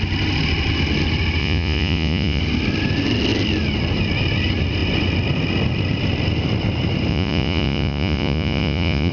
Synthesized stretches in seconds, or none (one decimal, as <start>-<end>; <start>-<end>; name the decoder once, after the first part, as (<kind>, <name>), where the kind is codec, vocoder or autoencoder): 1.4-2.4 (vocoder, Vocos); 7.1-9.1